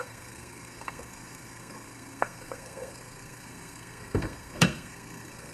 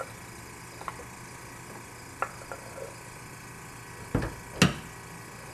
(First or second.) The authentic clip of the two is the second